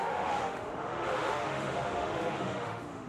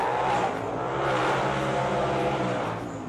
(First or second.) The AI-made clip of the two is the first